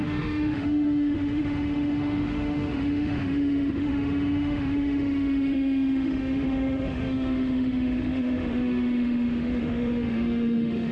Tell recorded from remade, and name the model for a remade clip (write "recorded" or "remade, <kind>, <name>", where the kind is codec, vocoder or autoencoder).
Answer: remade, autoencoder, DAC-VAE